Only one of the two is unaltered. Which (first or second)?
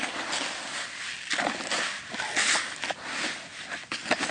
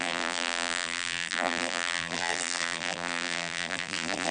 first